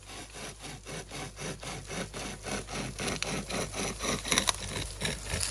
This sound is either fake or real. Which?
real